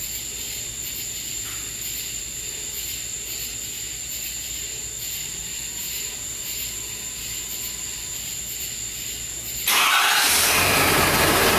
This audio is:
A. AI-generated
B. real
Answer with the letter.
B